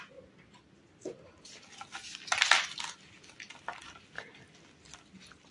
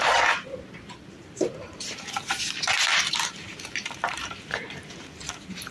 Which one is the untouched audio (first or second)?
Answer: first